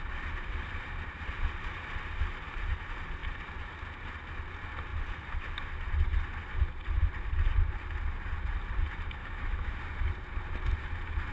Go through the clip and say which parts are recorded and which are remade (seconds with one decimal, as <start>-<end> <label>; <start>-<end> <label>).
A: 0.0-9.2 recorded; 9.2-9.8 remade; 9.8-11.3 recorded